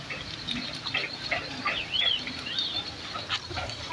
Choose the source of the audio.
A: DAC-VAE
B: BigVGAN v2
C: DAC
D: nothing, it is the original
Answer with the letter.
B